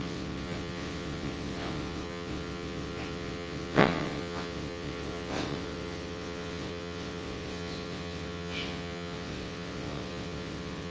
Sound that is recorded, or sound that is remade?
remade